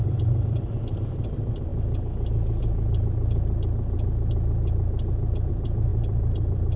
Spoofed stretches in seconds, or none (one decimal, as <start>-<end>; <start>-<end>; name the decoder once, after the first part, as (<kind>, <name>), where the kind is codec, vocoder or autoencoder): 0.0-1.7 (vocoder, BigVGAN v2); 5.5-6.8